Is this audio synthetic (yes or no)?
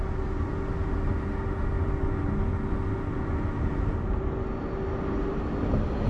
no